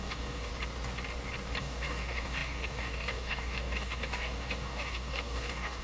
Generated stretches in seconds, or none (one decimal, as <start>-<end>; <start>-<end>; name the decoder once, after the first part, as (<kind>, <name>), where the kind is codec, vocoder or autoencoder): 0.0-0.5 (codec, DAC); 1.6-5.8